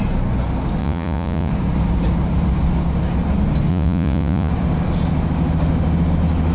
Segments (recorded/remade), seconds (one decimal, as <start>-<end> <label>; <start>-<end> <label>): 0.0-0.8 recorded; 0.8-1.5 remade; 1.5-3.7 recorded; 3.7-4.5 remade; 4.5-6.5 recorded